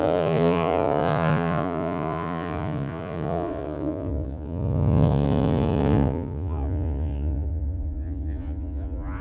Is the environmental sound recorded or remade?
remade